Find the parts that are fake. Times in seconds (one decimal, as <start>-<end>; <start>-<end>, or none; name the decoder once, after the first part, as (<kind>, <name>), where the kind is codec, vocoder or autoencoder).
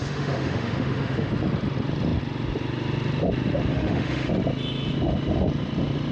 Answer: 0.0-1.3 (autoencoder, DAC-VAE); 3.7-4.3